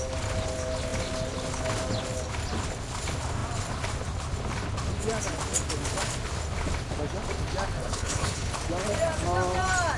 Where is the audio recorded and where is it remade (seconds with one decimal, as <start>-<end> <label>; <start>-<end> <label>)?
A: 0.0-7.8 recorded; 7.8-8.5 remade; 8.5-10.0 recorded